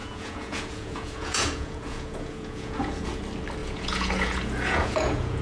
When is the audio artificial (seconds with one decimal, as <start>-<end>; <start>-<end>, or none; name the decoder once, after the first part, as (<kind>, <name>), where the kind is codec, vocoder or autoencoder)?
0.0-3.2 (vocoder, Vocos); 3.6-5.4